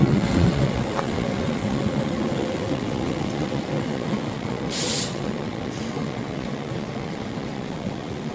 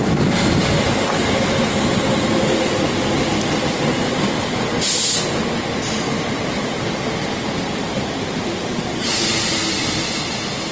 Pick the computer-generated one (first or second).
first